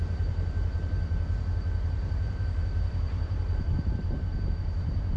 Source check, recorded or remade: remade